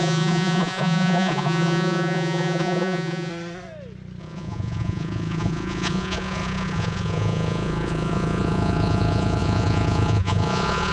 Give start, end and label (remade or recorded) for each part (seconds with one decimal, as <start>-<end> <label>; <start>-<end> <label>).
0.0-3.3 remade; 3.3-4.2 recorded; 4.2-10.9 remade